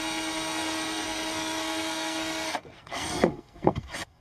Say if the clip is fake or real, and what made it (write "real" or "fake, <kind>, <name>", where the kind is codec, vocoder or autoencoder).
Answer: fake, codec, SNAC